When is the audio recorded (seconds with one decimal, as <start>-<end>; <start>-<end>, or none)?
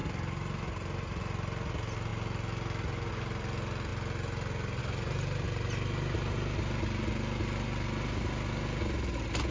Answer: 0.0-9.5